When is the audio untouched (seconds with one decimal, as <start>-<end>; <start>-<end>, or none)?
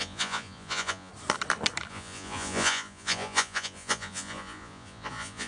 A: 1.1-1.9